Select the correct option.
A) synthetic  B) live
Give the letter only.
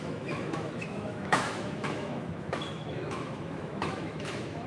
A